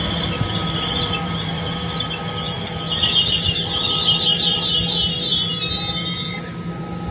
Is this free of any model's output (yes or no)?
yes